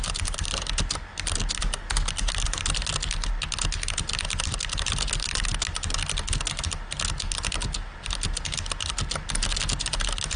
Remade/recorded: recorded